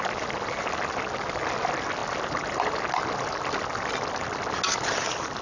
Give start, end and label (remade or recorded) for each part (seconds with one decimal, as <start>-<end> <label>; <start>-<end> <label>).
0.0-5.4 recorded